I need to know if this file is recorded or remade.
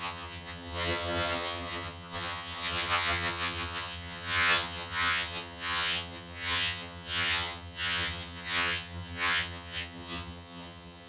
remade